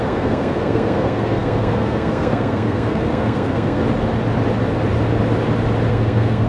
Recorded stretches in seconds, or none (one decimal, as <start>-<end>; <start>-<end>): 3.8-5.9